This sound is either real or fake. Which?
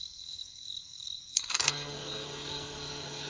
fake